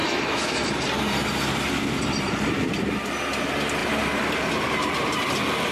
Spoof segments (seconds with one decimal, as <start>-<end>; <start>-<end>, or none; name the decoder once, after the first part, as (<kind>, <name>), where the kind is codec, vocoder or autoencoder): 0.0-0.7 (autoencoder, DAC-VAE)